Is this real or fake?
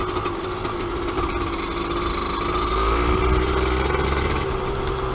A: real